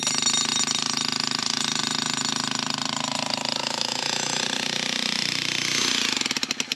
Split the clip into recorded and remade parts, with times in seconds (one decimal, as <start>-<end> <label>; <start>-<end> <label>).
0.0-3.6 recorded; 3.6-4.4 remade; 4.4-6.8 recorded